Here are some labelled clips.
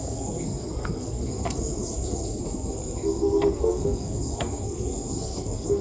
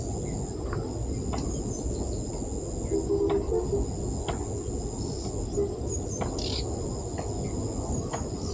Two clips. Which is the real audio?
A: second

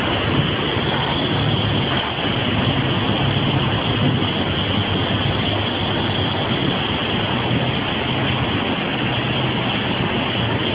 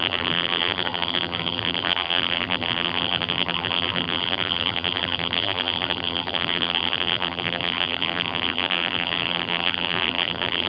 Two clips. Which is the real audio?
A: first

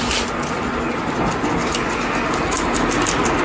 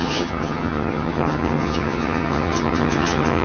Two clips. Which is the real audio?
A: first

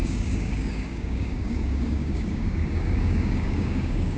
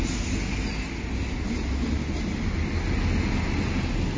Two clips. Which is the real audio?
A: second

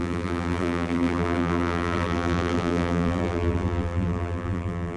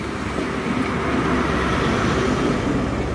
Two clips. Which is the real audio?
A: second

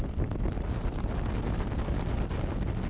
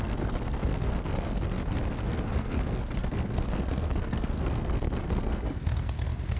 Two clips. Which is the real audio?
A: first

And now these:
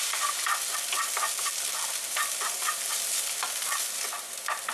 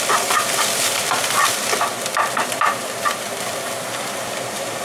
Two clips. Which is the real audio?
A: first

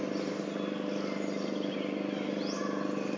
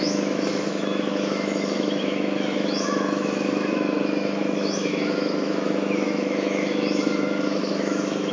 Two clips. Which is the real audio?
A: first